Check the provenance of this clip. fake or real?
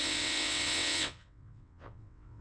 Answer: fake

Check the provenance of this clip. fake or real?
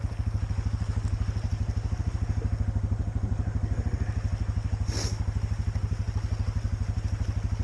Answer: real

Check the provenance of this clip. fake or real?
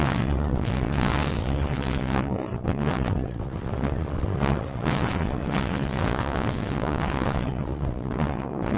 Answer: fake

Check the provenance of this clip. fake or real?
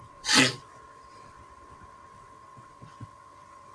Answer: fake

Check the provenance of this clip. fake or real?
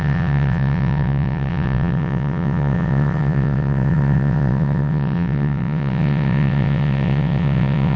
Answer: fake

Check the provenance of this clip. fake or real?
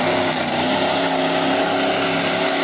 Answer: real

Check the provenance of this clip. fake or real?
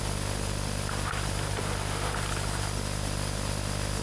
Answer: real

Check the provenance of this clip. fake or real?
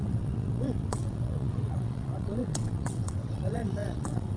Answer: fake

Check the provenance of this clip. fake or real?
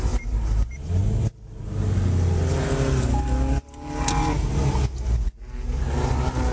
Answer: real